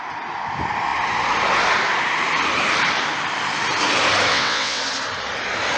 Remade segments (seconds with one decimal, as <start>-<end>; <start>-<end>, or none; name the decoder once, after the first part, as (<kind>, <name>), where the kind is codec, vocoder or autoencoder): 4.3-4.8 (vocoder, WaveNeXt)